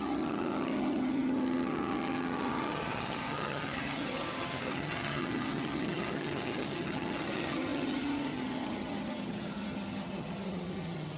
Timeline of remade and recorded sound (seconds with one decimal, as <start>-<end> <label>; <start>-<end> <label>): 0.0-11.2 remade